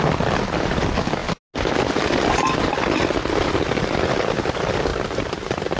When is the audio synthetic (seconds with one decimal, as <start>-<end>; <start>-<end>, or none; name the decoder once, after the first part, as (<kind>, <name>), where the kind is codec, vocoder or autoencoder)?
4.9-5.8 (vocoder, BigVGAN v2)